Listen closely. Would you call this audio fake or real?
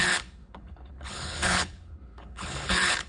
fake